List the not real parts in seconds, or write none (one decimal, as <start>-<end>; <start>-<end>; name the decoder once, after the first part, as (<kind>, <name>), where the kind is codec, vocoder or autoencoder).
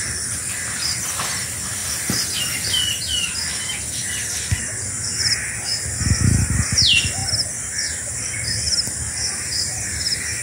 1.8-2.4 (vocoder, BigVGAN v2)